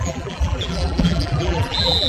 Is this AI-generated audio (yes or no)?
yes